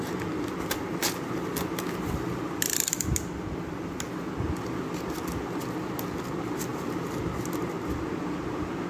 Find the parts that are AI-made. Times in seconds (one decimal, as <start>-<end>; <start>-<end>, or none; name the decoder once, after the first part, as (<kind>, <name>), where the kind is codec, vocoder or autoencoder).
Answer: none